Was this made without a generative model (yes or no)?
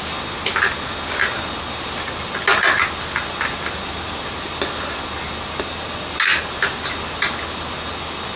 yes